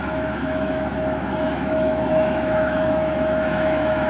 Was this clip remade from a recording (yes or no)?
yes